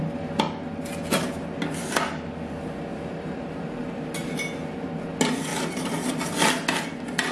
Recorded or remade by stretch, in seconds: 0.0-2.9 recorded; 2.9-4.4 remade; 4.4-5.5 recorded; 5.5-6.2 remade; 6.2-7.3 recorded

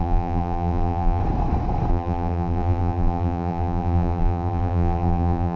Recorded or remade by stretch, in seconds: 0.0-1.2 remade; 1.2-1.9 recorded; 1.9-5.6 remade

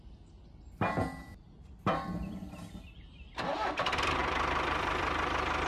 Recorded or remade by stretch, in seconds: 0.0-4.2 recorded; 4.2-5.7 remade

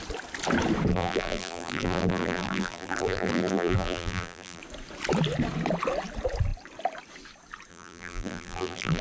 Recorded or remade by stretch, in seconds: 0.0-0.9 recorded; 0.9-4.6 remade; 4.6-7.7 recorded; 7.7-9.0 remade